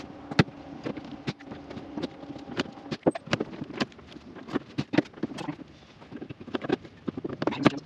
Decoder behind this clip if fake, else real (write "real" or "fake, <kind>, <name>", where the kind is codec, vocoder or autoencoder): real